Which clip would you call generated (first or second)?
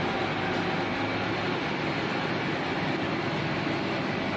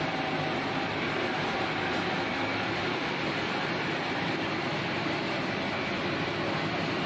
second